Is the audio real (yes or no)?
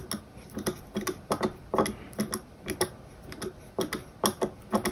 yes